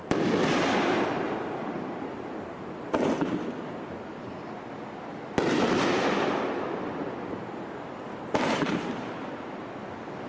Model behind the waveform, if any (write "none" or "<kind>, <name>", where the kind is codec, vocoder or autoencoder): none